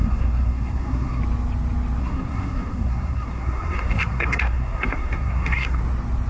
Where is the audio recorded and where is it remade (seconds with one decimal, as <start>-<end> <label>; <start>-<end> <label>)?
0.0-1.2 remade; 1.2-2.0 recorded; 2.0-5.8 remade; 5.8-6.3 recorded